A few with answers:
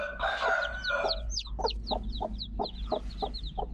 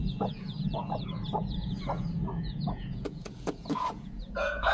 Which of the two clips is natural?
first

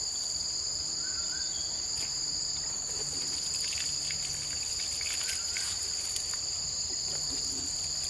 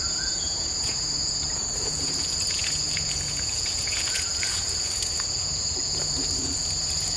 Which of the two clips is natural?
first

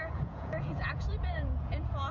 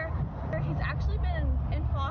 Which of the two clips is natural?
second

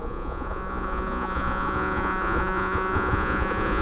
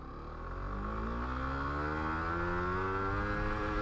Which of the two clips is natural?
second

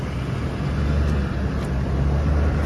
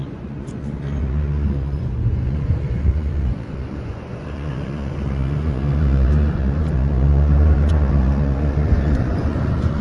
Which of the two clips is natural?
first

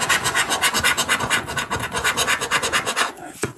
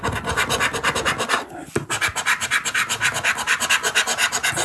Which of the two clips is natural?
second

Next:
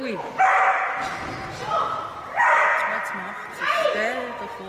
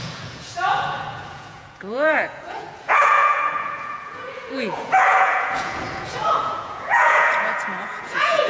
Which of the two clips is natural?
first